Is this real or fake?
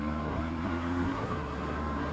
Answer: fake